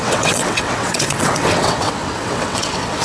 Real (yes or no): no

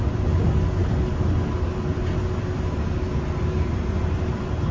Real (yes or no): yes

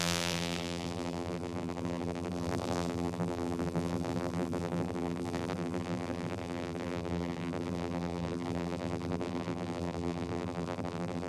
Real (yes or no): no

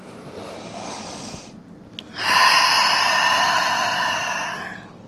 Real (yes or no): yes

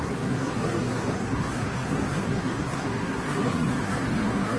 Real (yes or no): no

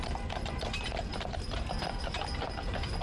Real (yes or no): no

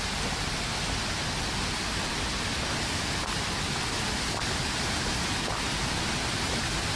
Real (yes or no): yes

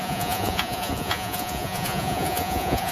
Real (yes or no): no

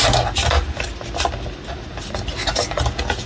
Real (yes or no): yes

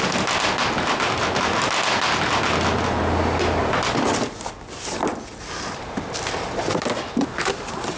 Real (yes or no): yes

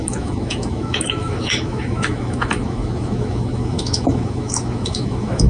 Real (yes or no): no